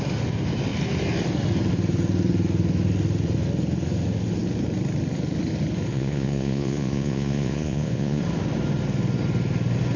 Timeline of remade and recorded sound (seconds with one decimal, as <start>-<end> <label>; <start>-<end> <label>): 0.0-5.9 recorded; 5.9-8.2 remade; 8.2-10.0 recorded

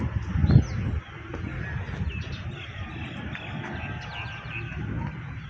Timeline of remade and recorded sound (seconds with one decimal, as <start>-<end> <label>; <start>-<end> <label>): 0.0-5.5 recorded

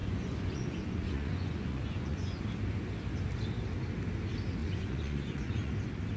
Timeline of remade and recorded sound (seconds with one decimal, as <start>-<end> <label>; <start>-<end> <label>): 0.0-2.4 remade; 2.4-4.6 recorded; 4.6-5.7 remade; 5.7-6.2 recorded

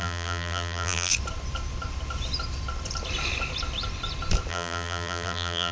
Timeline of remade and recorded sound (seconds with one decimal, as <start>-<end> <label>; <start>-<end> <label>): 0.0-1.1 remade; 1.1-4.5 recorded; 4.5-5.7 remade

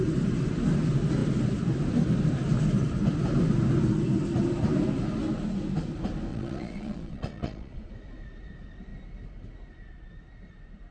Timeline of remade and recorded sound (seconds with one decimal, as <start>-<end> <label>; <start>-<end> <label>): 0.0-6.3 recorded; 6.3-7.9 remade; 7.9-10.9 recorded

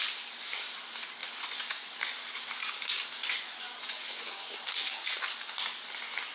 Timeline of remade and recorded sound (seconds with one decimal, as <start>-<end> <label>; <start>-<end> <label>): 0.0-1.2 recorded; 1.2-1.9 remade; 1.9-3.2 recorded; 3.2-4.5 remade; 4.5-6.3 recorded

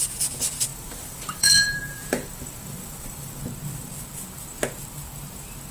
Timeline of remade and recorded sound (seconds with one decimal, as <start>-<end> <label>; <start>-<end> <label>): 0.0-0.7 recorded; 0.7-3.4 remade; 3.4-5.7 recorded